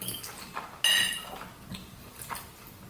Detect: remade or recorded recorded